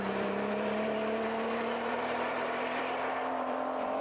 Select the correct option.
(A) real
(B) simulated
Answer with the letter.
B